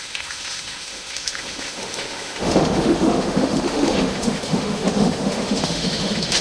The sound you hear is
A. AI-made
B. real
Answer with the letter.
A